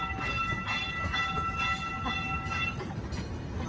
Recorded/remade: recorded